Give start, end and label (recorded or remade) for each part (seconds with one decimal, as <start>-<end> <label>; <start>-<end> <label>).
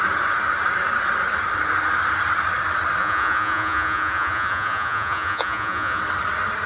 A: 0.0-3.0 recorded; 3.0-6.0 remade; 6.0-6.7 recorded